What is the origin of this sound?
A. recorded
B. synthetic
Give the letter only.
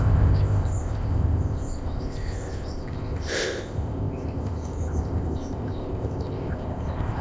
B